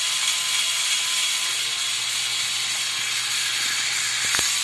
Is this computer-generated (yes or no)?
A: no